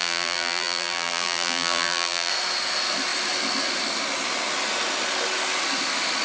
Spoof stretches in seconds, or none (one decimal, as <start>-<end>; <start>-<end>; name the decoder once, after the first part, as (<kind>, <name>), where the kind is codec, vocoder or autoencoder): 0.0-2.3 (vocoder, BigVGAN v2)